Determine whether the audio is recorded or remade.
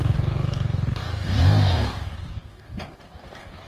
remade